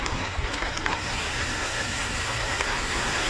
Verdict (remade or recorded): remade